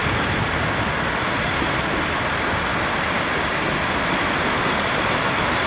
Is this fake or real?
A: real